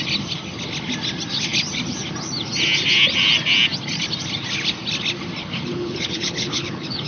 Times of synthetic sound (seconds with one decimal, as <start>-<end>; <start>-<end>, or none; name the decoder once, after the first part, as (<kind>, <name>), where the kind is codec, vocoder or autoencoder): 5.4-7.1 (codec, HILCodec)